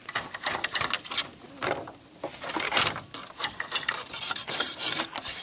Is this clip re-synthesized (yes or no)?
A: no